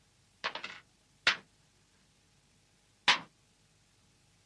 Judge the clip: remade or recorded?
recorded